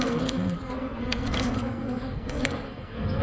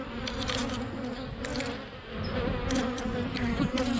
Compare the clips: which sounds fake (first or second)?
first